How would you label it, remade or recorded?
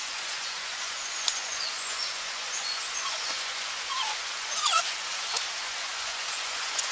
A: remade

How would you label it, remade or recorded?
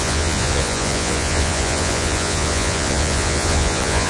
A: remade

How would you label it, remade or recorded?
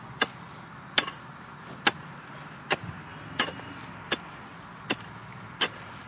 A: recorded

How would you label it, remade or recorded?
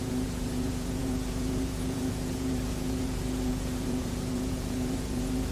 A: remade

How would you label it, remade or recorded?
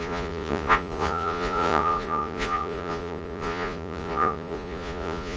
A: remade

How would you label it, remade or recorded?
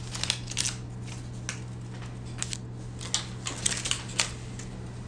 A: recorded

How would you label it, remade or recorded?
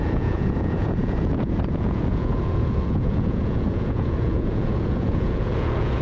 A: remade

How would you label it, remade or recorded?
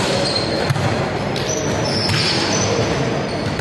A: recorded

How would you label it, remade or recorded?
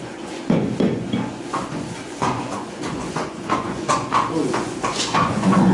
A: remade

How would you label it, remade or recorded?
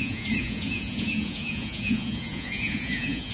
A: remade